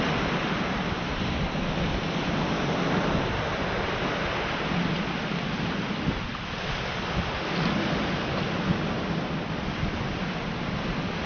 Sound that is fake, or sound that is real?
real